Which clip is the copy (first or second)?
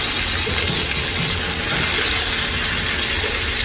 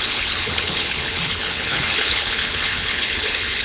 second